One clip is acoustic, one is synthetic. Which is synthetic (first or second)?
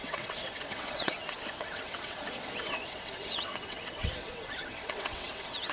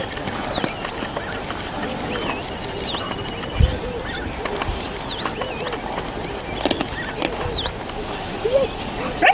first